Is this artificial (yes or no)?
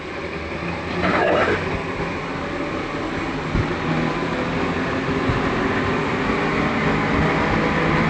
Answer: no